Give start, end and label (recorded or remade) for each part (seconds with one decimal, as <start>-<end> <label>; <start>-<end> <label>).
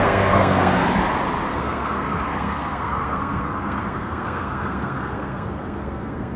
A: 0.0-0.8 remade; 0.8-1.5 recorded; 1.5-6.4 remade